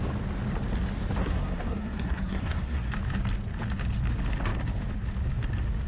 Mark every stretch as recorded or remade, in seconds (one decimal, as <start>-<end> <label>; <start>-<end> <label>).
0.0-1.2 recorded; 1.2-2.9 remade; 2.9-5.9 recorded